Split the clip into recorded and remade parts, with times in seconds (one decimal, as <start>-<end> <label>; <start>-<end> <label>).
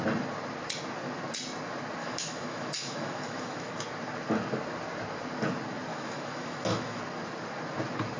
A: 0.0-2.0 recorded; 2.0-3.7 remade; 3.7-5.9 recorded; 5.9-7.0 remade; 7.0-8.2 recorded